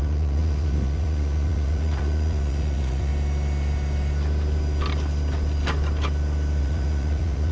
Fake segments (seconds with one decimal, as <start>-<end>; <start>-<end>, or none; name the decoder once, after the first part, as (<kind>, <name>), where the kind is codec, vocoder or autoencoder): 0.0-3.1 (vocoder, Vocos); 6.6-7.5